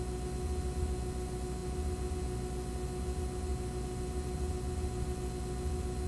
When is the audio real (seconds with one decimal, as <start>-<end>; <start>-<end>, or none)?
0.0-6.1